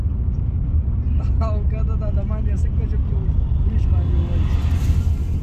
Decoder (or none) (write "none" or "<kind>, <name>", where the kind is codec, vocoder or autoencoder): none